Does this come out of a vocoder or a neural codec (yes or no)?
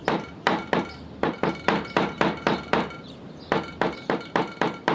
yes